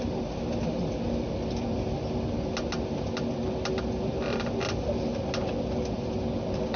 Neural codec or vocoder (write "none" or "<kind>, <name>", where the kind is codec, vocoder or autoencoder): none